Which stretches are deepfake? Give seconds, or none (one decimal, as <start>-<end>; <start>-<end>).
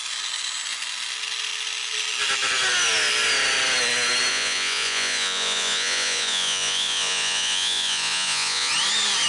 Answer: 4.3-8.7